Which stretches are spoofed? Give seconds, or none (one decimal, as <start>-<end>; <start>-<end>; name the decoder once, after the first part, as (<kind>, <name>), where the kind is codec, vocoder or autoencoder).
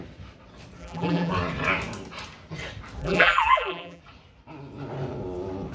0.8-1.3 (vocoder, BigVGAN v2); 3.0-4.0